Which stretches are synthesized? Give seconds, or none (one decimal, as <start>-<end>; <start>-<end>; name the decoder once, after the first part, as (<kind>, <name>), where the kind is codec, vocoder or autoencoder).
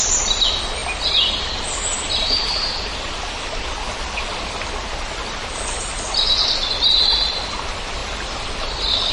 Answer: none